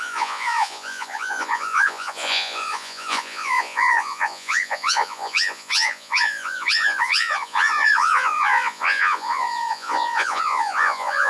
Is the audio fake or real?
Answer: fake